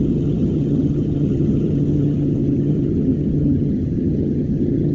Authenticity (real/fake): fake